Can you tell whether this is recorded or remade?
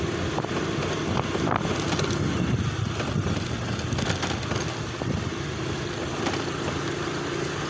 recorded